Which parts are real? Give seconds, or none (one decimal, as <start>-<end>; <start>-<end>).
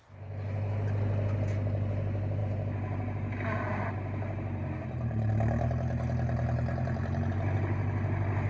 0.0-8.5